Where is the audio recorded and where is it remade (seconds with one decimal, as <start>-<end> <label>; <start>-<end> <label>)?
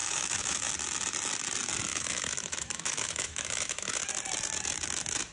0.0-0.7 remade; 0.7-1.9 recorded; 1.9-4.0 remade; 4.0-5.3 recorded